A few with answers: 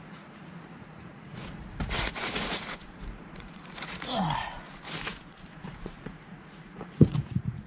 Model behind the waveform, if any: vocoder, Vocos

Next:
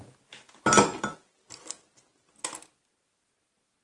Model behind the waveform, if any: none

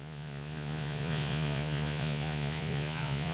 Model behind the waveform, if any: vocoder, Vocos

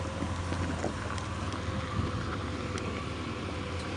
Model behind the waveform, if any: none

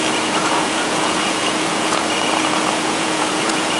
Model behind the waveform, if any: vocoder, Vocos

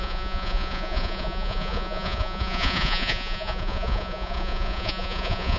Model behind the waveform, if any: vocoder, Vocos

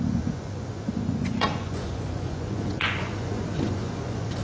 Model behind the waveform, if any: vocoder, Vocos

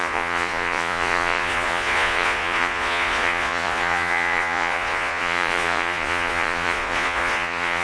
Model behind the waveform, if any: vocoder, Vocos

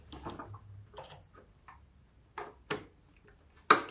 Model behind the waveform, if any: none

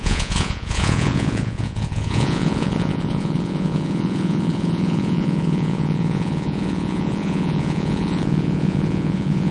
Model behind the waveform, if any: vocoder, Vocos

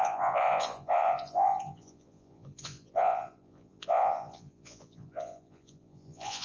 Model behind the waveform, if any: vocoder, Vocos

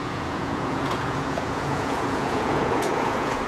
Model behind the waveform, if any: vocoder, Vocos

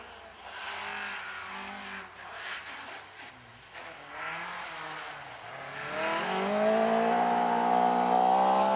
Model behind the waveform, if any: none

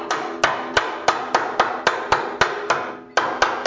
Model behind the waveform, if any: none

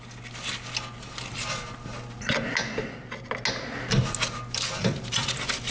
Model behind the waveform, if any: none